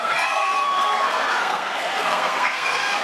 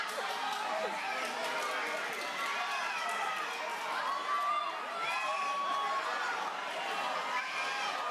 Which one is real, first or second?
second